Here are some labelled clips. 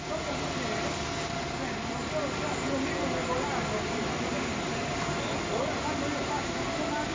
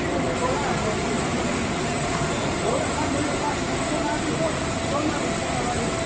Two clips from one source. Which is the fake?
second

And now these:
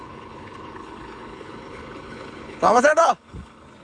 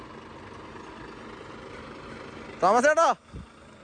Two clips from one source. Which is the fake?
first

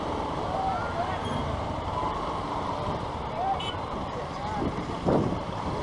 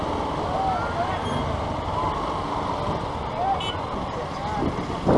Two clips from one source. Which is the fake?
first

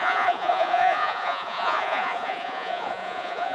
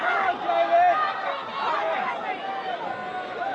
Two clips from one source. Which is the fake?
first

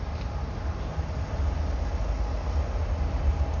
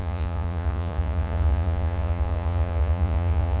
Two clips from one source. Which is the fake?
second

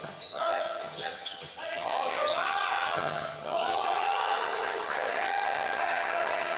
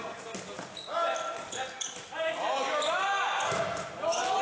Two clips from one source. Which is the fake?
first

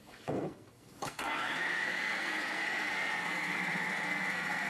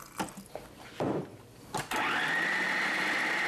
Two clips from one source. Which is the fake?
first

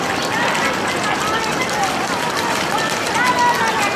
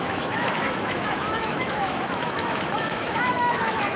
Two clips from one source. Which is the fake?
second